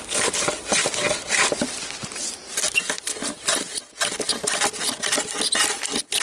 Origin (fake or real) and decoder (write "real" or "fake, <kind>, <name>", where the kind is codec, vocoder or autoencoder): real